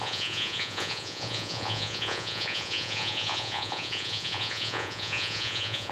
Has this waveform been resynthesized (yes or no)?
yes